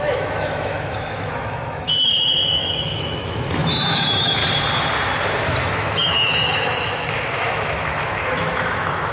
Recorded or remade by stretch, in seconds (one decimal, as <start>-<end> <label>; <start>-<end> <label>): 0.0-4.4 remade; 4.4-5.7 recorded; 5.7-9.1 remade